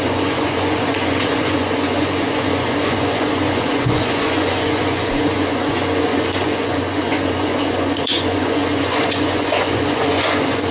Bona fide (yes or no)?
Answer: no